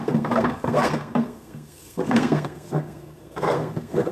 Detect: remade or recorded remade